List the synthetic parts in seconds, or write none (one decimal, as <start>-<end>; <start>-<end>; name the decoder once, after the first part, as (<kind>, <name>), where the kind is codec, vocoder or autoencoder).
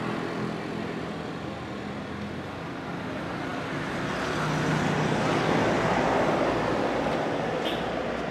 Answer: none